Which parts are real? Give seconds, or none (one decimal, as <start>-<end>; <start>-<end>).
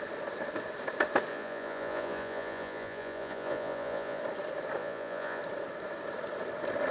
0.0-1.3; 4.2-4.8; 5.4-6.9